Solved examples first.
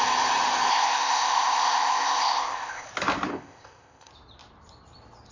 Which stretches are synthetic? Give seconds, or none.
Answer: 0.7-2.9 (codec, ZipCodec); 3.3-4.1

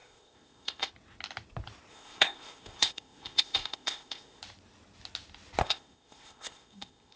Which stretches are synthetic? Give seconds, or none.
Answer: 0.0-0.9 (codec, ZipCodec); 1.9-4.4; 5.6-7.2

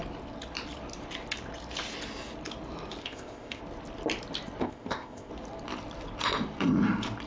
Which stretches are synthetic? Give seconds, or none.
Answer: 3.0-3.6 (codec, ZipCodec); 4.6-5.3

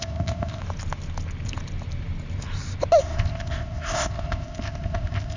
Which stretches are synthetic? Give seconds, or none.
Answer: 0.0-0.6 (codec, ZipCodec); 3.0-5.4